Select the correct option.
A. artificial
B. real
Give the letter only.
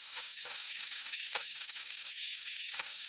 A